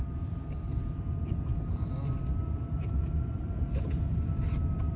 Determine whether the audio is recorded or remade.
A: recorded